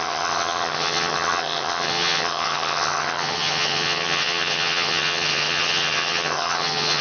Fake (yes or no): yes